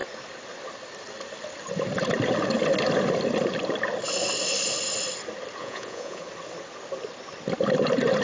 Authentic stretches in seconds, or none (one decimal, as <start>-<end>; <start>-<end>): 0.0-5.6; 6.2-8.2